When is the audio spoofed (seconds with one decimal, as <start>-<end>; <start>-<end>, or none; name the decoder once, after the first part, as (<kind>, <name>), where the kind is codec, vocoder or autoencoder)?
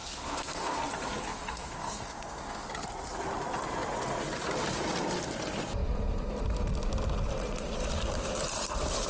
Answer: 0.0-0.8 (codec, SNAC); 1.3-2.7